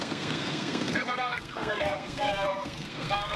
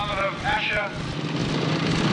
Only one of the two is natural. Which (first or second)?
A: second